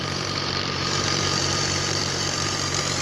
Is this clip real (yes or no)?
no